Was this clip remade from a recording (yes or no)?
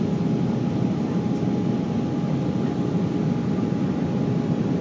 no